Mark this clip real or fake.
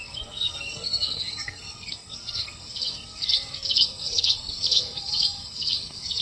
fake